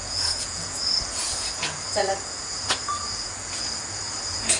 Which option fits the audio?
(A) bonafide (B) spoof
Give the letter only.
B